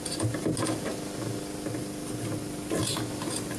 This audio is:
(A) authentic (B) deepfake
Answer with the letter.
A